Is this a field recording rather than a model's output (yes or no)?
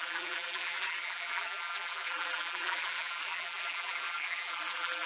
no